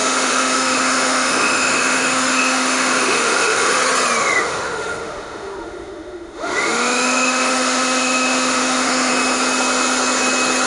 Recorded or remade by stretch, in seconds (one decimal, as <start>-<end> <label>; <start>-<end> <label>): 0.0-3.8 remade; 3.8-4.2 recorded; 4.2-9.1 remade; 9.1-10.7 recorded